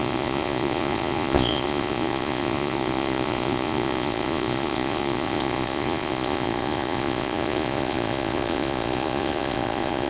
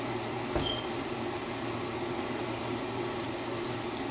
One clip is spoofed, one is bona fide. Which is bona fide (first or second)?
second